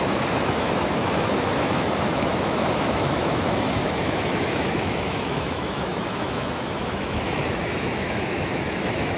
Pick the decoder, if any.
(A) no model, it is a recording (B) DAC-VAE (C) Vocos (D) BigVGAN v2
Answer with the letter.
B